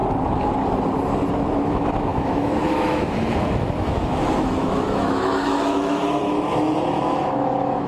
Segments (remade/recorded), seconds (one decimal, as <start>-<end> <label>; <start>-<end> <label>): 0.0-1.7 recorded; 1.7-7.9 remade